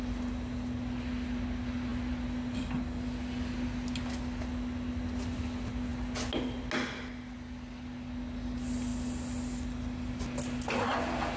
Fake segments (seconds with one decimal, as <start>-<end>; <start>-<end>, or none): none